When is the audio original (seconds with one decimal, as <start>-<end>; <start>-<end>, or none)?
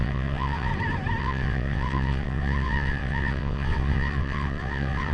0.7-1.2